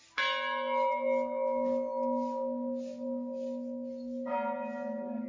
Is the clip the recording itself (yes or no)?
yes